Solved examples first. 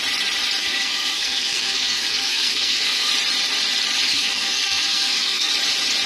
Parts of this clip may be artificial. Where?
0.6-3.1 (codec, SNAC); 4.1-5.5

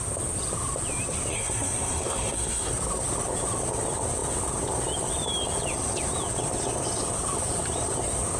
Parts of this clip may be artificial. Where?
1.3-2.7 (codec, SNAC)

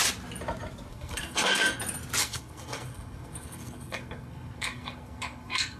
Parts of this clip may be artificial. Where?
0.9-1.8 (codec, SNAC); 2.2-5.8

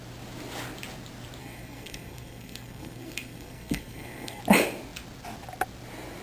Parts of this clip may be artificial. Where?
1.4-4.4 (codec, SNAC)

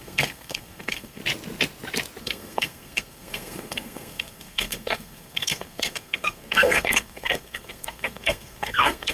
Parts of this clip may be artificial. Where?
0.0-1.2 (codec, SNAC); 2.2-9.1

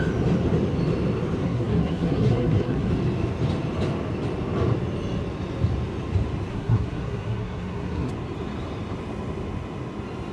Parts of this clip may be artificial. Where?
1.4-2.9 (codec, SNAC); 6.5-8.1